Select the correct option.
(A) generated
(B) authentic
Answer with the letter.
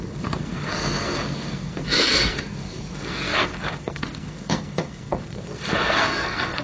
A